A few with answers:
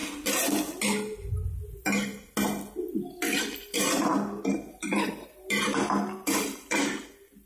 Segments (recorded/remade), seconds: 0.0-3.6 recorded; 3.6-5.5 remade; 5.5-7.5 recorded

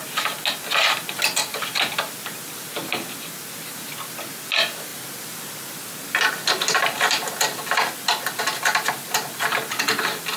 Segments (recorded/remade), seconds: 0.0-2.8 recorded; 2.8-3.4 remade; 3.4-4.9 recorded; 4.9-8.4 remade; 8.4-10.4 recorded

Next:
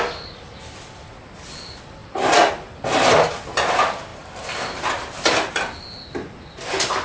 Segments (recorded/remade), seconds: 0.0-7.0 recorded

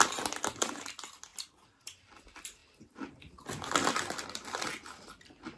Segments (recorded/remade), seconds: 0.0-5.6 recorded

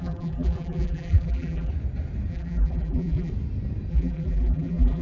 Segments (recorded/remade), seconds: 0.0-1.7 remade; 1.7-2.3 recorded; 2.3-3.3 remade; 3.3-3.9 recorded; 3.9-5.0 remade

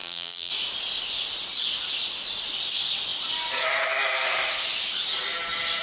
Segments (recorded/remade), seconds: 0.0-0.5 remade; 0.5-5.8 recorded